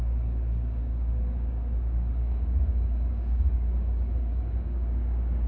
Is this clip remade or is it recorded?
remade